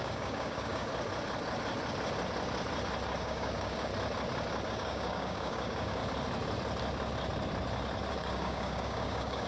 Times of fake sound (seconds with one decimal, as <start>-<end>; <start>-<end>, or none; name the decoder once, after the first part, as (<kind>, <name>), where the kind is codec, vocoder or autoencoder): 0.0-0.9 (codec, DAC); 3.2-3.9; 4.7-6.0; 8.1-9.5